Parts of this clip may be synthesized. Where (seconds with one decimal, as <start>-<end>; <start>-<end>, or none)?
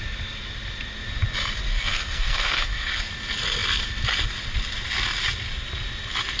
1.7-3.1